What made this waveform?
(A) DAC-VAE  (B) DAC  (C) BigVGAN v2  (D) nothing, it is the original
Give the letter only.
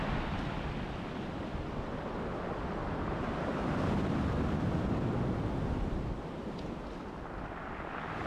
D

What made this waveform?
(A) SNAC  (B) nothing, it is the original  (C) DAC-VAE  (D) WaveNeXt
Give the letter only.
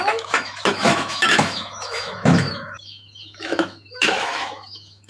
C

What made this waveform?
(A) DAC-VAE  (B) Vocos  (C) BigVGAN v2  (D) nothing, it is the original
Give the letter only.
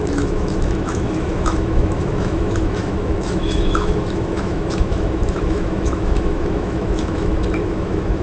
A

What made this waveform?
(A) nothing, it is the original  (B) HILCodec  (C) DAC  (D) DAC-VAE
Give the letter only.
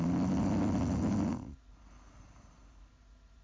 A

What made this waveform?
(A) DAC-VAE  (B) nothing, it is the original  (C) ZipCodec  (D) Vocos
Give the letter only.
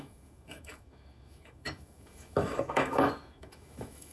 A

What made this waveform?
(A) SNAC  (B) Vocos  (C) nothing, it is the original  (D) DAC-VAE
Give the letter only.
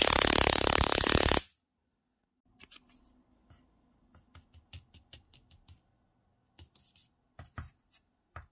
C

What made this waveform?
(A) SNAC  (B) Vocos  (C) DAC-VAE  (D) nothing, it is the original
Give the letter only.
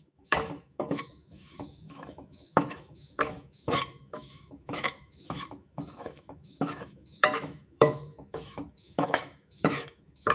C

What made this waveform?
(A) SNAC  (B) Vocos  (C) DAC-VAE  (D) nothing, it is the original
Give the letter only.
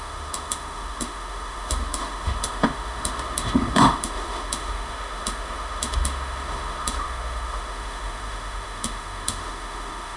C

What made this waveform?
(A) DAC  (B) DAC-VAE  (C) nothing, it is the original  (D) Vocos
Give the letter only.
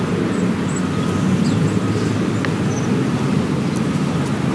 C